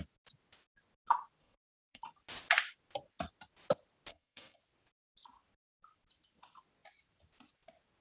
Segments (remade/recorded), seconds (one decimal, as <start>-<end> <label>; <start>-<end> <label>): 0.0-1.4 recorded; 1.4-2.0 remade; 2.0-4.1 recorded; 4.1-4.6 remade; 4.6-8.0 recorded